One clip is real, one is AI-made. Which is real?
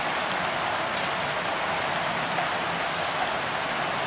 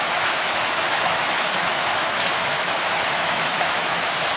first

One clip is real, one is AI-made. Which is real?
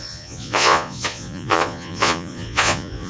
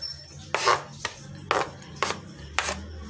second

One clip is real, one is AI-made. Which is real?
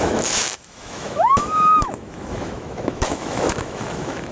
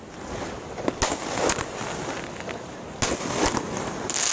second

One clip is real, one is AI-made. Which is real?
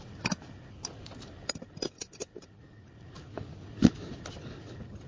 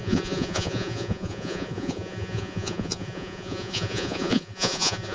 first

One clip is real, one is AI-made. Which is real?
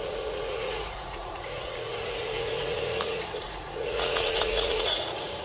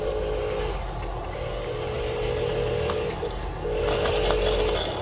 second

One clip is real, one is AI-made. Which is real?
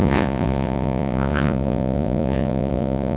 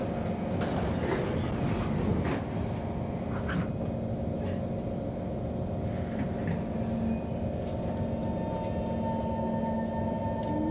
second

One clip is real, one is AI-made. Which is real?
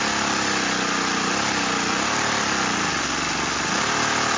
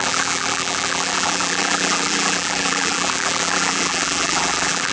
first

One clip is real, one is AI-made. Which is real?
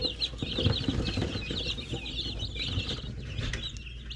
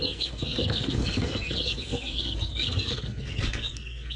first